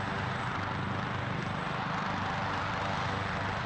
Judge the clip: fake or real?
real